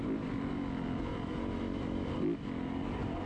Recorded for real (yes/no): yes